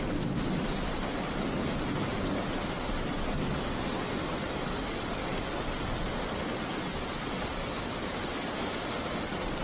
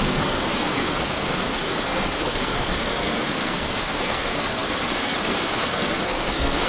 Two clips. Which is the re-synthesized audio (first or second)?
second